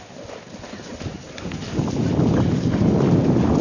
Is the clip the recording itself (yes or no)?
yes